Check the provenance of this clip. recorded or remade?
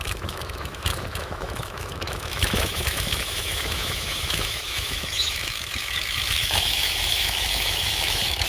remade